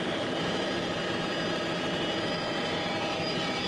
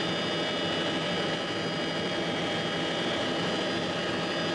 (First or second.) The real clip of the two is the second